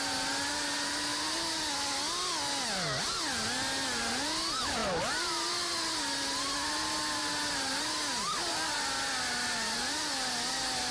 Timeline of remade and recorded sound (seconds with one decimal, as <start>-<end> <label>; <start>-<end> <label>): 0.0-10.9 recorded